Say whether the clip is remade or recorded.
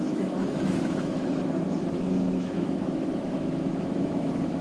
remade